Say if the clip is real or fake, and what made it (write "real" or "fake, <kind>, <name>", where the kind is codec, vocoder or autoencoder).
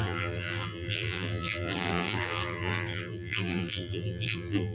fake, vocoder, BigVGAN v2